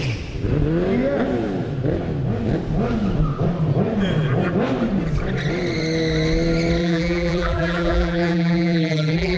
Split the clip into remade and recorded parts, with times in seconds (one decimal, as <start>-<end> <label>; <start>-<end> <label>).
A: 0.0-6.8 recorded; 6.8-9.4 remade